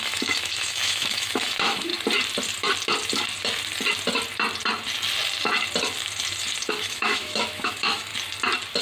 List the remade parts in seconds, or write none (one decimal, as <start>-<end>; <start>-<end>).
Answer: 0.0-1.9; 6.7-8.1

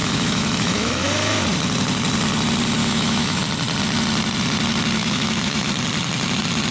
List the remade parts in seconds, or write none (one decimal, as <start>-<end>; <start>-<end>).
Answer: 0.0-1.1; 2.8-3.4; 5.0-5.7

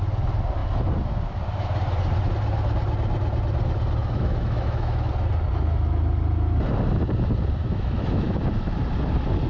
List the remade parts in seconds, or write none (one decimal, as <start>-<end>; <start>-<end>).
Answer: 4.0-5.1; 7.6-8.4

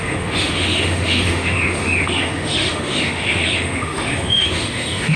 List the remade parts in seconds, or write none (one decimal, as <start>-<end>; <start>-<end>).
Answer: 0.0-5.2

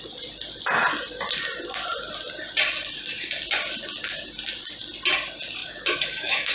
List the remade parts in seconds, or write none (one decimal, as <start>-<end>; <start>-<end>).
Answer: 5.6-6.5

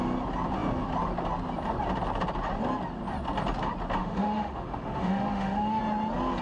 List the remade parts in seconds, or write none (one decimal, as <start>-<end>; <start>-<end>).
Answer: 4.0-5.8

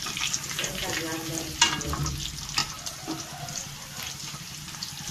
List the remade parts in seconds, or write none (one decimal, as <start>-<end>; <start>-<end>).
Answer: none